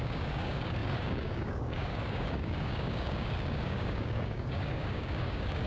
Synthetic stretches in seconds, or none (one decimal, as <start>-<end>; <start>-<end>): 0.0-5.7